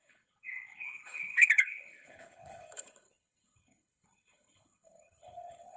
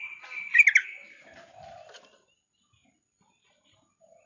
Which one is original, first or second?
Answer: second